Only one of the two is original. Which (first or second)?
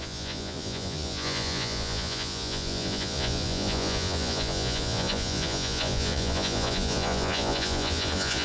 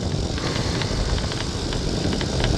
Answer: second